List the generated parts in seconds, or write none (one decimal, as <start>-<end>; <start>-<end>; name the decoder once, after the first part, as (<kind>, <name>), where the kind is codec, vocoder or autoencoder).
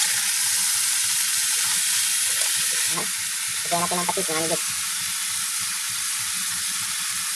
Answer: none